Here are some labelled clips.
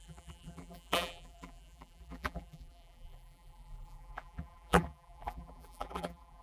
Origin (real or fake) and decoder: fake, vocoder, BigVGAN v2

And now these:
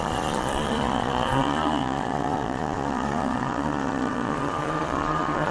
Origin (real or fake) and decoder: fake, vocoder, Vocos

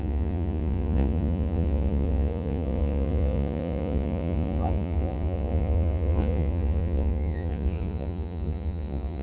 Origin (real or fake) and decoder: fake, vocoder, Vocos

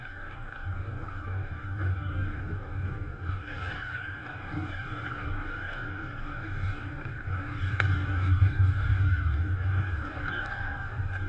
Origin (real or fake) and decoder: fake, codec, DAC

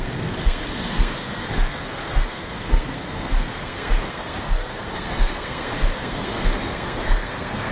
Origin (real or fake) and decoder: fake, codec, SNAC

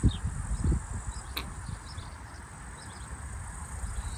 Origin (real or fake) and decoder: real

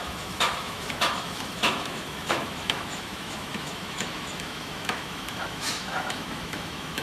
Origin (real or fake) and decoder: fake, autoencoder, DAC-VAE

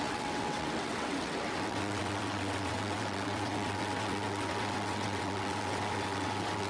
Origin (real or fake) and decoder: fake, vocoder, WaveNeXt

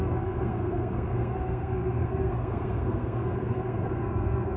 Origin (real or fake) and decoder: fake, codec, SNAC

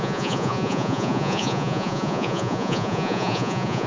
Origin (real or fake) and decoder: fake, vocoder, Vocos